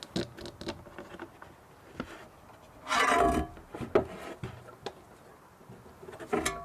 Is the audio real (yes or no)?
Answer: yes